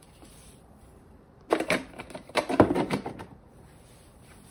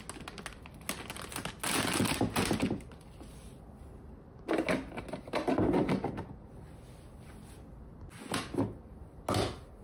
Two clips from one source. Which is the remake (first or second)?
first